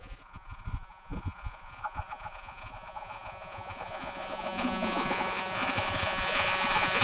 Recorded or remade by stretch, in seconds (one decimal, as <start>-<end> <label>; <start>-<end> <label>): 0.0-7.0 remade